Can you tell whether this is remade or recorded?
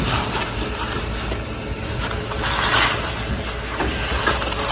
recorded